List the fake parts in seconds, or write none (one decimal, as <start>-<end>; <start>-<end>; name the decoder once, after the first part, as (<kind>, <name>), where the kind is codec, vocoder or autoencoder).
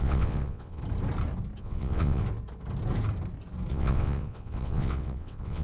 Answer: 0.0-0.8 (vocoder, WaveNeXt); 1.6-2.2; 3.7-5.6